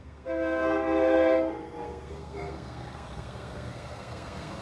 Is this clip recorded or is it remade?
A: remade